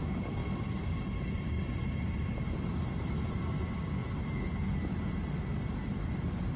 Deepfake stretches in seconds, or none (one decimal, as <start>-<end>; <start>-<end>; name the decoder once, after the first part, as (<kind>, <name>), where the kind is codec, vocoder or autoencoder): 0.0-4.0 (vocoder, BigVGAN v2); 5.6-6.6